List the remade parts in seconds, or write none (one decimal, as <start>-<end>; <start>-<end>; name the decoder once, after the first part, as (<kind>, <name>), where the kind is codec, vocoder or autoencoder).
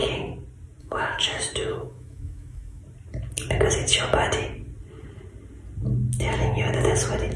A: 0.8-2.8 (autoencoder, DAC-VAE)